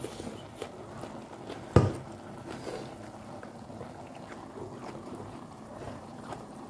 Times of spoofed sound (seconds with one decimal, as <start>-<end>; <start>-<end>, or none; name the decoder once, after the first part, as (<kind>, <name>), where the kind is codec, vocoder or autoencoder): 5.0-6.7 (vocoder, BigVGAN v2)